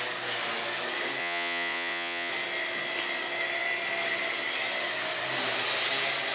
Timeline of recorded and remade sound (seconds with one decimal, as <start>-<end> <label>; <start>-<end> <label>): 0.0-1.2 recorded; 1.2-2.3 remade; 2.3-6.3 recorded